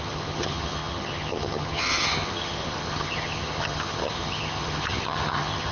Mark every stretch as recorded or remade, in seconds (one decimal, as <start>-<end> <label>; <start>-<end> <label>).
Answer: 0.0-5.7 remade